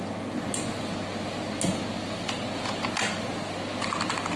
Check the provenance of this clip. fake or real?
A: real